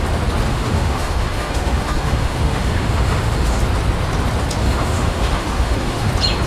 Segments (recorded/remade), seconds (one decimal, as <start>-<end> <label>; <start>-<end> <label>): 0.0-0.5 recorded; 0.5-3.6 remade; 3.6-4.6 recorded; 4.6-6.1 remade; 6.1-6.5 recorded